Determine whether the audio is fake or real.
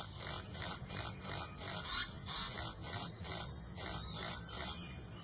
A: real